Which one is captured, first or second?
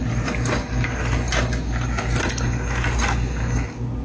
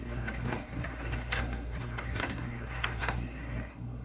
first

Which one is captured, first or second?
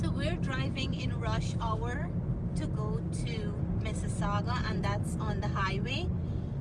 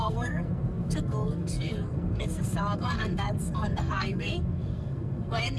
first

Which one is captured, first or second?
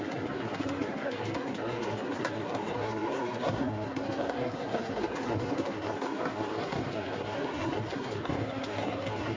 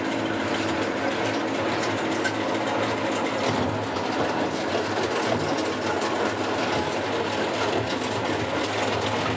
second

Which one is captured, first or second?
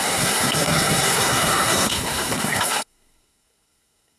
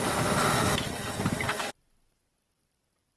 second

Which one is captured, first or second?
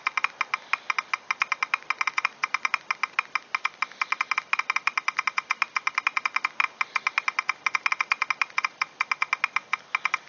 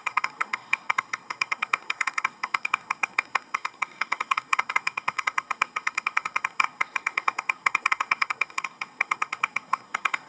first